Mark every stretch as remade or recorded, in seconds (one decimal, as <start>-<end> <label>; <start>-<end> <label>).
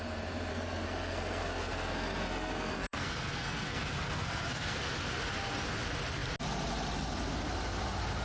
0.0-0.5 recorded; 0.5-4.8 remade; 4.8-8.2 recorded